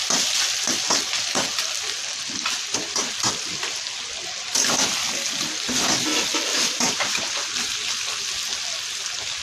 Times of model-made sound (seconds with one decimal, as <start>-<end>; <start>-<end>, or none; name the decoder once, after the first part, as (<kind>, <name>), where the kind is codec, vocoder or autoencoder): 6.5-7.5 (vocoder, BigVGAN v2)